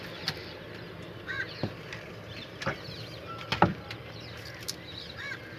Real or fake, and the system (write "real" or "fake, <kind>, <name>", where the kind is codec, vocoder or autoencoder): real